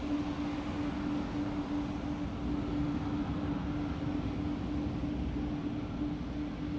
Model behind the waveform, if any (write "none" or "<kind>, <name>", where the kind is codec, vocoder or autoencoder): none